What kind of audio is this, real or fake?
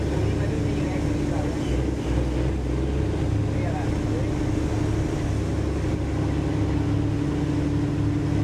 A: real